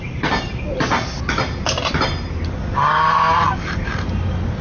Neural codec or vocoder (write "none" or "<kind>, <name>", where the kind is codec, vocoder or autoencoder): none